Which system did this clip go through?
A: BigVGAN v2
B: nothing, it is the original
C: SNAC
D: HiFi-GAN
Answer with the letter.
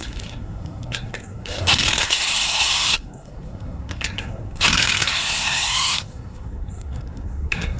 C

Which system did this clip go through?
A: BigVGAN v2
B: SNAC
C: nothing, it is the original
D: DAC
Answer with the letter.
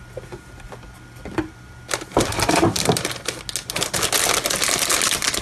C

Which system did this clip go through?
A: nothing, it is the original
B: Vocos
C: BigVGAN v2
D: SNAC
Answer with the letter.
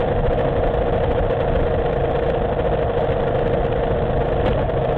A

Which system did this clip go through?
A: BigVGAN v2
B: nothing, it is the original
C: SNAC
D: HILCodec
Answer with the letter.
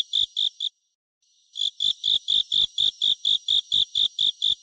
B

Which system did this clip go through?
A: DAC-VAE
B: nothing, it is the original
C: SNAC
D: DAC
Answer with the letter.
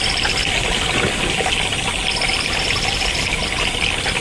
B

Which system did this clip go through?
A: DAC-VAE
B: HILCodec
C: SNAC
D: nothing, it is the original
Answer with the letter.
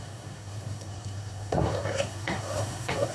C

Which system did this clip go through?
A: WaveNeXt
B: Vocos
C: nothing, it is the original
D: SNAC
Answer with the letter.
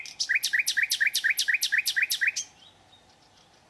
C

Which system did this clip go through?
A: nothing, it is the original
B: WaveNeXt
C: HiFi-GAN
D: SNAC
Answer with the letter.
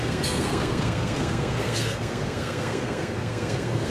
D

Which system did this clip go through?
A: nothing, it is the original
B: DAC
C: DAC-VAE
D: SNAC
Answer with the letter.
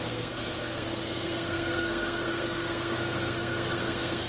D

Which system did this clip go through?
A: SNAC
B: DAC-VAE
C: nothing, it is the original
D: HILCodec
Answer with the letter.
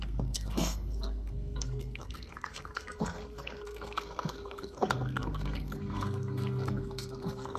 A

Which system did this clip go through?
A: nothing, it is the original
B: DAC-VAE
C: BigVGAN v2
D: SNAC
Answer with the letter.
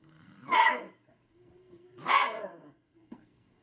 D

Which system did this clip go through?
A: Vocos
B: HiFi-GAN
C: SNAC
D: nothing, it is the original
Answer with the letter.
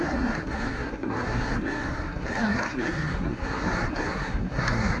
C